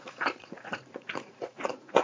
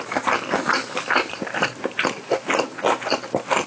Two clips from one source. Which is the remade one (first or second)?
first